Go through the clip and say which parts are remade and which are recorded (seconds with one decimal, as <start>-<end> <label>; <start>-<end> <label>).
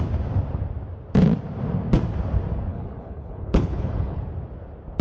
0.0-2.7 recorded; 2.7-4.2 remade; 4.2-5.0 recorded